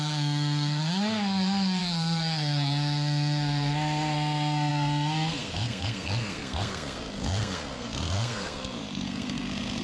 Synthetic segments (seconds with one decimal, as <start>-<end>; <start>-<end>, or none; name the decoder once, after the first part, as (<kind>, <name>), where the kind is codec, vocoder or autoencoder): 0.0-9.8 (codec, SNAC)